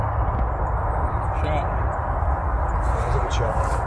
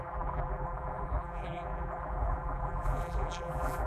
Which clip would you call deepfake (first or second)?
second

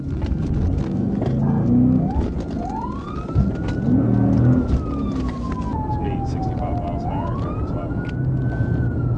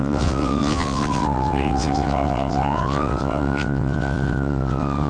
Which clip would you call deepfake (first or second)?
second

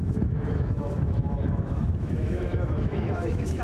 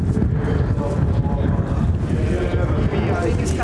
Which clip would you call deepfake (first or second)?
first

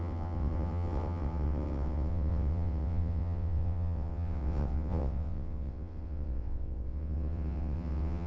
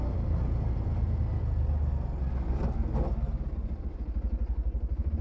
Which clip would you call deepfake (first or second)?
first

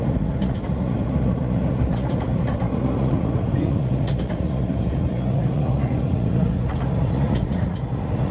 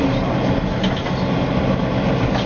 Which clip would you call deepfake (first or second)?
first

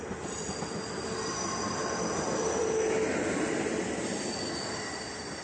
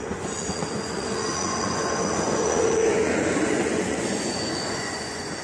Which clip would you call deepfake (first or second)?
second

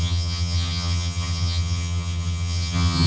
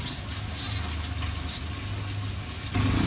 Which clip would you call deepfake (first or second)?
first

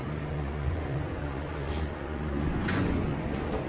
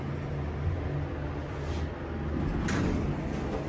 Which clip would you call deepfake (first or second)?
first